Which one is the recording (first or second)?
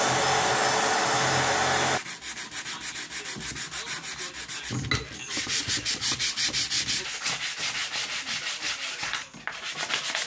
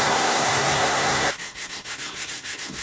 first